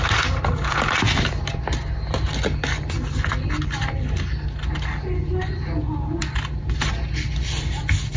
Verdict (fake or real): real